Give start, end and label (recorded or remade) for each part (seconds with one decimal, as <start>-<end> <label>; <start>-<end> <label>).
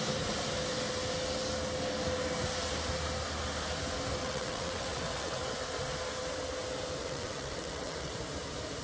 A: 0.0-4.2 recorded; 4.2-5.4 remade; 5.4-7.0 recorded; 7.0-8.1 remade; 8.1-8.8 recorded